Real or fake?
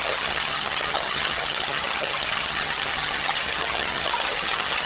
fake